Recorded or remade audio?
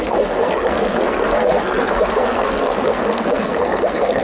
remade